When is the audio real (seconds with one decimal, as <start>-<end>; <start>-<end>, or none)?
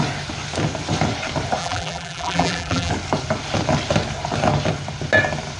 0.0-1.6; 2.9-5.6